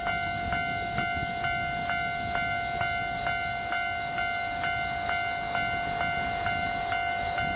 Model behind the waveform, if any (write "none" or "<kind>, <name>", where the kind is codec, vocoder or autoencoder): none